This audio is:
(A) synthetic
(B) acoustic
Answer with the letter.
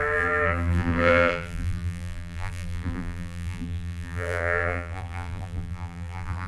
A